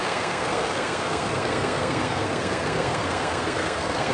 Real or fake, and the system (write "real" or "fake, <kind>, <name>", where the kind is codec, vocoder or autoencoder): fake, codec, SNAC